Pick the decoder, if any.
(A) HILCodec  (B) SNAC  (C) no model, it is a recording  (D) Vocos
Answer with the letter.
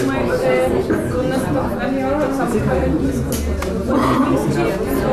C